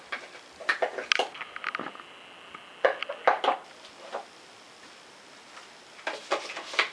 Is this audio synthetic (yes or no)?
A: no